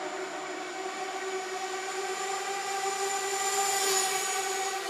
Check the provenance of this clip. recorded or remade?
recorded